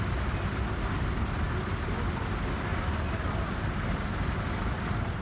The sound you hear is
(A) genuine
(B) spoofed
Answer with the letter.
A